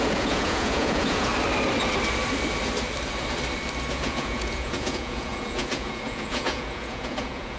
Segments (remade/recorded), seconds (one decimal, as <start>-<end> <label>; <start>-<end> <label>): 0.0-1.3 remade; 1.3-3.9 recorded; 3.9-7.6 remade